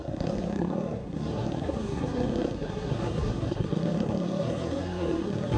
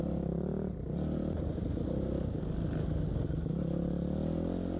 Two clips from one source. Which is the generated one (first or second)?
first